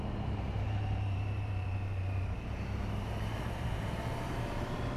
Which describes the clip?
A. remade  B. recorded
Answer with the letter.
A